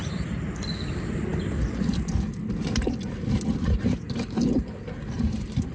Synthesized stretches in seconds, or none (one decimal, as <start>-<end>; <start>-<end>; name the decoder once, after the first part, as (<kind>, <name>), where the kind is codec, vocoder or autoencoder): none